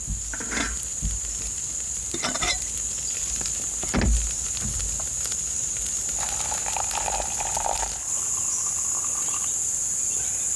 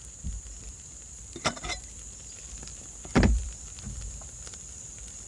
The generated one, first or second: second